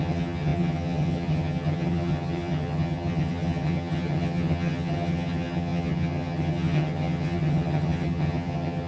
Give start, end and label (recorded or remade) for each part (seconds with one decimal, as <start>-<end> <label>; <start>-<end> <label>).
0.0-8.9 remade